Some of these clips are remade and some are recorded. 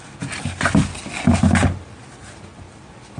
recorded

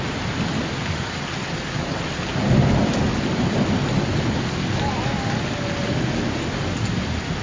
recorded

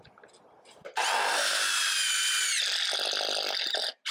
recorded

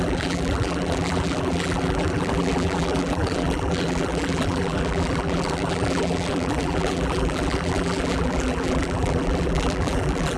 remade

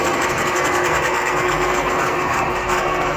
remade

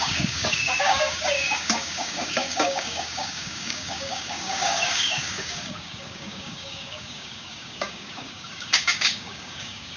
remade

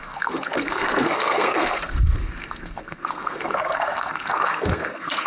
remade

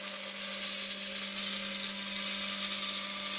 recorded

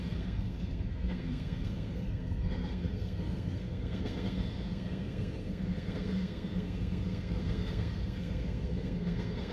remade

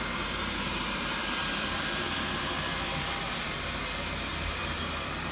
remade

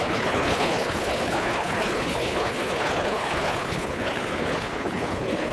remade